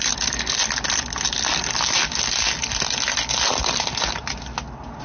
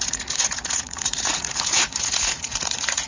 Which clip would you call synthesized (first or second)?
second